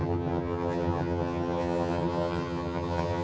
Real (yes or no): no